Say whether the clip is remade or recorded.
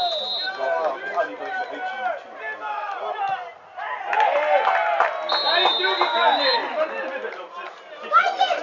remade